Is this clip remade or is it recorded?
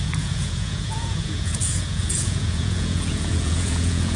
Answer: remade